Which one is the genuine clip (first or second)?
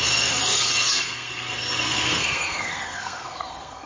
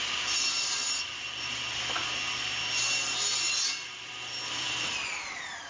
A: second